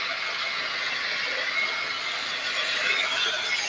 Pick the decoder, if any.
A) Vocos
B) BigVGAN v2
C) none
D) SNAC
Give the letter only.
C